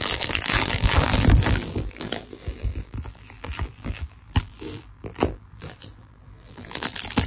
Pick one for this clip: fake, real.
fake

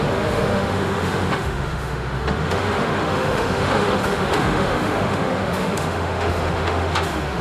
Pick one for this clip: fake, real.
fake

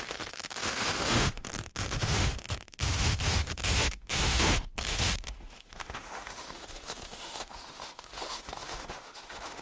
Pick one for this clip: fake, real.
fake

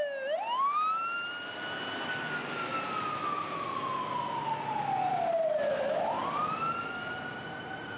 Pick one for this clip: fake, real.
real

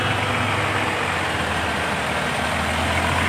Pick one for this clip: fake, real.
real